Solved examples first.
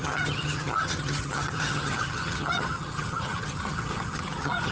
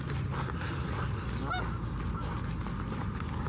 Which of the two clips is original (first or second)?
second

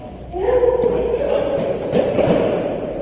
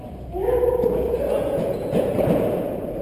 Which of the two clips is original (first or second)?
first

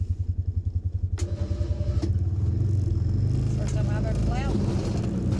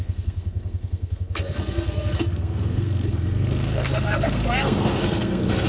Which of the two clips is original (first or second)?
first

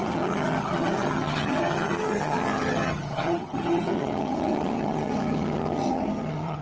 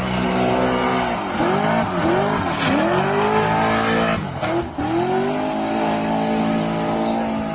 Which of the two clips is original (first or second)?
second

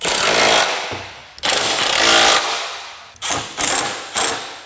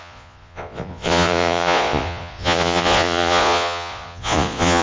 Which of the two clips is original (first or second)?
first